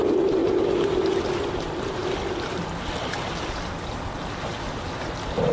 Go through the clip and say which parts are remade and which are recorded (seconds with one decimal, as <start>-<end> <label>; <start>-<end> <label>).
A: 0.0-5.5 recorded